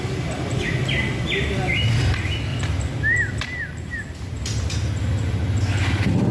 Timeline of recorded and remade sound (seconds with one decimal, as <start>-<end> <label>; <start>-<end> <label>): 0.0-2.5 recorded; 2.5-5.4 remade; 5.4-6.3 recorded